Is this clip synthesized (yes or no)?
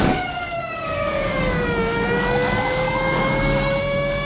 yes